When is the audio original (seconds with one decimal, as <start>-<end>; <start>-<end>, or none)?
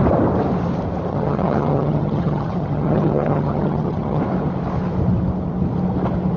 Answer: 0.0-1.1; 4.2-6.4